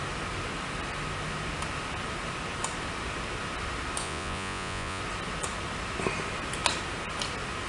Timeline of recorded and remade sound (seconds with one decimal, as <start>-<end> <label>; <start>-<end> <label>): 0.0-4.0 recorded; 4.0-5.0 remade; 5.0-7.7 recorded